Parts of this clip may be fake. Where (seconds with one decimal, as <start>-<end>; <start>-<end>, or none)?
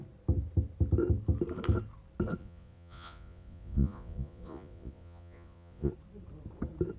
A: 2.4-5.9